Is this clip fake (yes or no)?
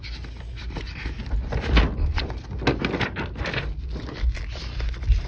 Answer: no